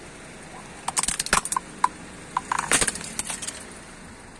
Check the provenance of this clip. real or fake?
real